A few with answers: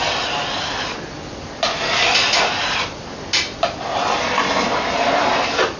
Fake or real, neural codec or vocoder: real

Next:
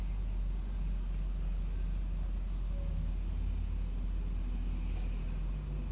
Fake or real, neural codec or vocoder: real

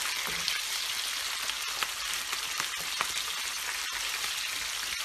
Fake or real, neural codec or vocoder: real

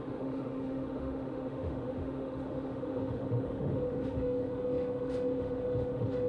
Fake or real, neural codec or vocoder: fake, autoencoder, DAC-VAE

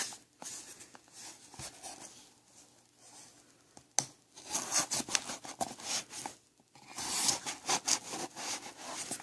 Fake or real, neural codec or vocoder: real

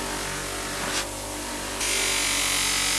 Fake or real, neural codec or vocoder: real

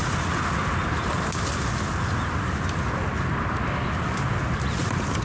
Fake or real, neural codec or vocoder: real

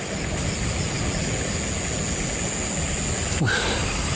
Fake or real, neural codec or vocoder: real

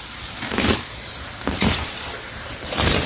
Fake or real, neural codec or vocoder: fake, vocoder, BigVGAN v2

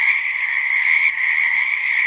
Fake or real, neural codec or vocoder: real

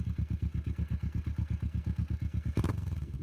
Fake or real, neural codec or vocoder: fake, codec, SNAC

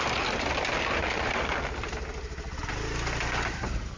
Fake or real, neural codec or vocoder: real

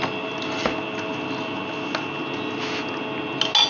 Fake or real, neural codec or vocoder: real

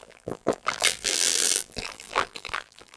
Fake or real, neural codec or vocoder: fake, vocoder, BigVGAN v2